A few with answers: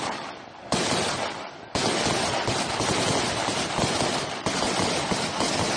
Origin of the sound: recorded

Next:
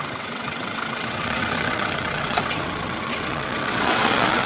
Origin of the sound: remade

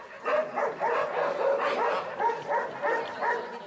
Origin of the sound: recorded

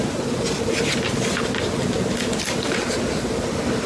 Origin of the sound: recorded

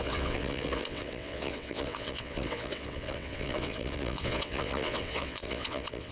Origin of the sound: remade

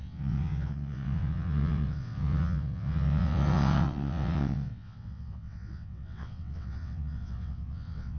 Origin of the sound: remade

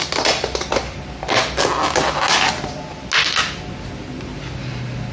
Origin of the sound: recorded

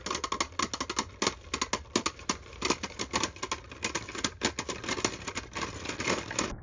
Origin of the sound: recorded